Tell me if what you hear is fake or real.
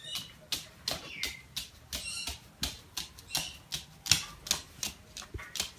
real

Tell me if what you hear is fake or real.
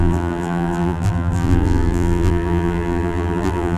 fake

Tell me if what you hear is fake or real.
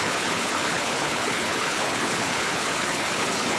fake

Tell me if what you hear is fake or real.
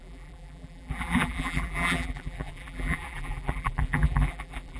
fake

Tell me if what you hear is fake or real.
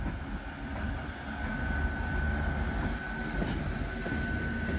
real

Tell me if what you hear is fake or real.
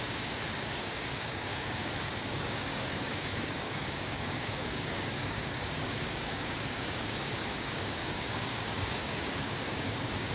fake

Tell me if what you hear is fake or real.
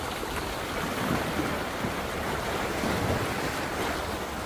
fake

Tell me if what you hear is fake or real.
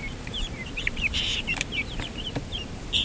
fake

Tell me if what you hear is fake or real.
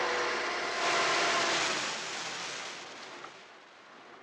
real